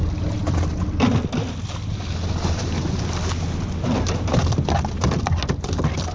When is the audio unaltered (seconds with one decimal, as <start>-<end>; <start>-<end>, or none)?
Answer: 0.0-6.1